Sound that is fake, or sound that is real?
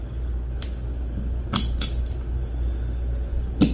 real